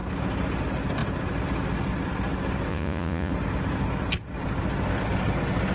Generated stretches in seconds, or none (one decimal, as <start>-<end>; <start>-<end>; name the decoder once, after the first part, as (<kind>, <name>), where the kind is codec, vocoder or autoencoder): 2.7-3.3 (vocoder, Vocos)